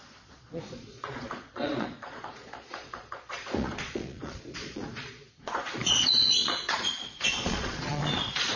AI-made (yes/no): yes